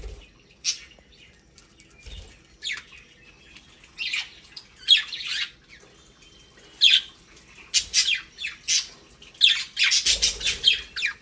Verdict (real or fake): real